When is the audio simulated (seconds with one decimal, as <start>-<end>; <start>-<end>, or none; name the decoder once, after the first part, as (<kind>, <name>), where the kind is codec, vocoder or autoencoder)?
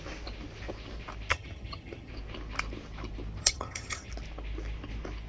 1.3-2.1 (vocoder, HiFi-GAN); 3.4-4.1